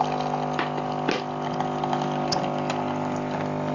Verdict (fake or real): real